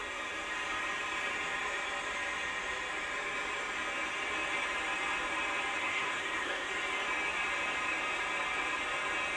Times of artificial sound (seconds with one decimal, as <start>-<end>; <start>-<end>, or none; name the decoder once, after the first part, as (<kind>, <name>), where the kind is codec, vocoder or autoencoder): 5.8-6.7 (codec, SNAC)